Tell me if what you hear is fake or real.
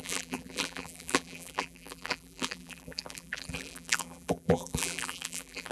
fake